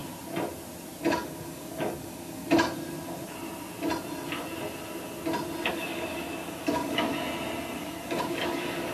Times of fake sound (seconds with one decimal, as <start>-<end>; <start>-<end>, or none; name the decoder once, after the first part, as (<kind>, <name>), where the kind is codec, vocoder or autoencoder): 1.1-2.4 (codec, DAC); 5.7-7.1; 7.8-8.9